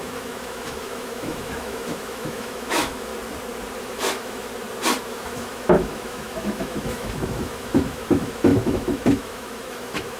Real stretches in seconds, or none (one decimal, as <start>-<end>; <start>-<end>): 3.1-3.8; 4.5-5.1